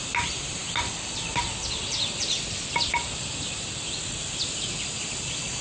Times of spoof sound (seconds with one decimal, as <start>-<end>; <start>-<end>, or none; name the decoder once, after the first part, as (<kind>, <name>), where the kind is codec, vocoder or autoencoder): none